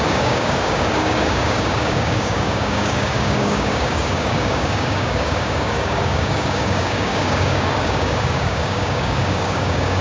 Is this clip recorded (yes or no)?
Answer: no